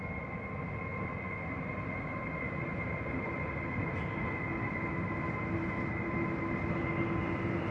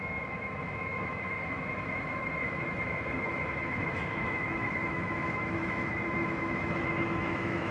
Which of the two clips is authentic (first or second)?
first